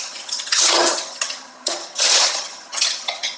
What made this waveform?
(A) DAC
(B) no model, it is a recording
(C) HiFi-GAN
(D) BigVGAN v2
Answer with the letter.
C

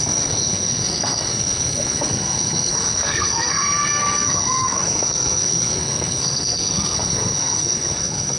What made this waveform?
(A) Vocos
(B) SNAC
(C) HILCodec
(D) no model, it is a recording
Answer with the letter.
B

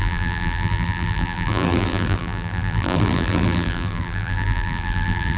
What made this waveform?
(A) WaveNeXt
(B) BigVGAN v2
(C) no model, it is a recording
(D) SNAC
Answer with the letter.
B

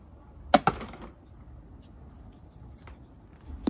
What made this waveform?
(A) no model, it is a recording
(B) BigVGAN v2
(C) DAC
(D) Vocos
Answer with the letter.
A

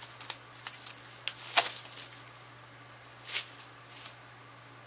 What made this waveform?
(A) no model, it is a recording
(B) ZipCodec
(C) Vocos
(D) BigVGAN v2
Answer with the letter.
A